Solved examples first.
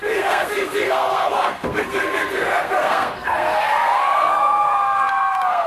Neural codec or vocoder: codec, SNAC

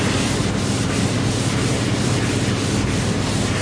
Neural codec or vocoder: none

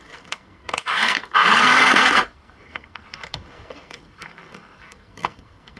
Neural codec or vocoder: codec, SNAC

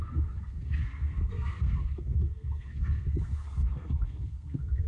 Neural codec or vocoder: codec, SNAC